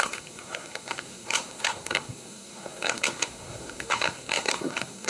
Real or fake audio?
fake